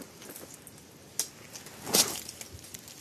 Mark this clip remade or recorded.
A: recorded